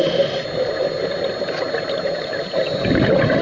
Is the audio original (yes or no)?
yes